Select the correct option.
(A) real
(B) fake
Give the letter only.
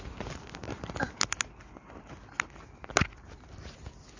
A